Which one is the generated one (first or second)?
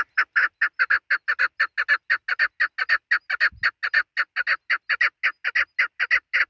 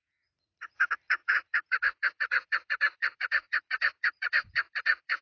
second